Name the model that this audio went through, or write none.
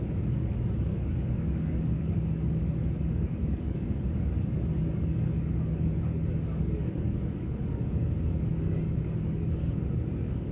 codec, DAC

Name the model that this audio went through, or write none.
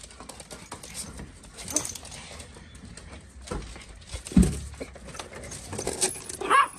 none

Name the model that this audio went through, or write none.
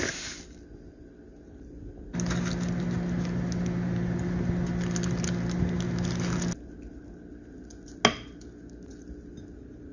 none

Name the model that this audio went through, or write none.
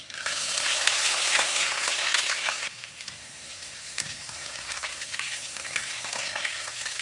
codec, SNAC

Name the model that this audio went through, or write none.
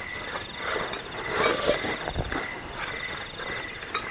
none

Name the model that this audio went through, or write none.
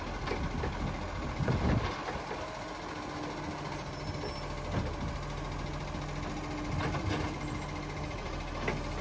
none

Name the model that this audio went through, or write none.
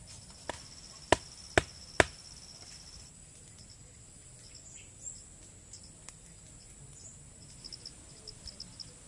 none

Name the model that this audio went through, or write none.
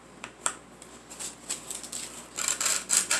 none